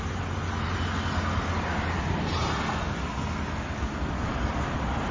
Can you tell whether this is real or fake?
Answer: real